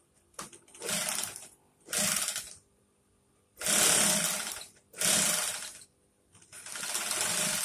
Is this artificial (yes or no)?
no